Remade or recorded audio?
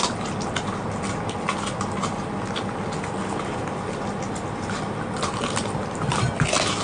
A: recorded